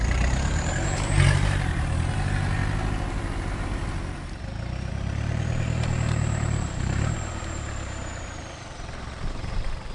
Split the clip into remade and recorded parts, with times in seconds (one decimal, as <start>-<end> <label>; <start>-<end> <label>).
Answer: 0.0-2.6 remade; 2.6-4.9 recorded; 4.9-9.9 remade